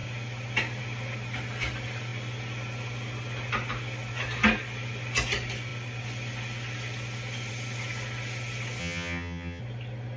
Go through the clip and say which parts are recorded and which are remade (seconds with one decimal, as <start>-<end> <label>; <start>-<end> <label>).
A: 0.0-8.8 recorded; 8.8-9.6 remade; 9.6-10.2 recorded